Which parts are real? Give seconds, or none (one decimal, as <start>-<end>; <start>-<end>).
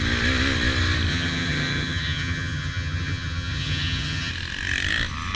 0.0-1.1; 4.3-5.3